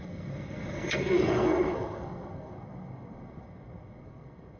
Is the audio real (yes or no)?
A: no